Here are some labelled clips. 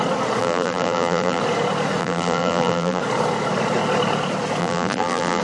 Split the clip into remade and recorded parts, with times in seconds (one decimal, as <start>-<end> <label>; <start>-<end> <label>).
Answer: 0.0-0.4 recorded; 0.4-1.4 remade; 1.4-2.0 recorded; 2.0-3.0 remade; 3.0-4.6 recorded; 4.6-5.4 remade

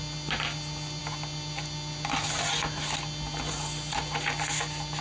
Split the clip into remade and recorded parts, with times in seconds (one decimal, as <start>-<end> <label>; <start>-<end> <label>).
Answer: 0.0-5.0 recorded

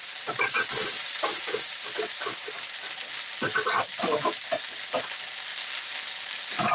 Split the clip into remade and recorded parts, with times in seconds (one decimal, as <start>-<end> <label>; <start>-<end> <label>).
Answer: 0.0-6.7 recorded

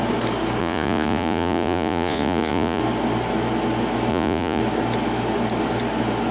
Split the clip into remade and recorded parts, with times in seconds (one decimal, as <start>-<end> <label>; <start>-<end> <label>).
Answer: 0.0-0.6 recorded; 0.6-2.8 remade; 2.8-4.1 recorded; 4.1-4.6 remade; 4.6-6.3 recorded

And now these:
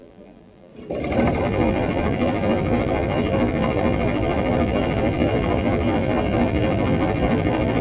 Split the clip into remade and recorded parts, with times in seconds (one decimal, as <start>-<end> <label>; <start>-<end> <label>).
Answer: 0.0-0.7 remade; 0.7-1.4 recorded; 1.4-7.8 remade

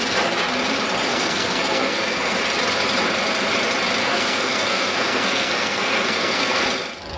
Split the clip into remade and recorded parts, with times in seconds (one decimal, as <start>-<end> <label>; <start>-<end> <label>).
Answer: 0.0-1.1 recorded; 1.1-2.4 remade; 2.4-4.0 recorded; 4.0-6.6 remade; 6.6-7.2 recorded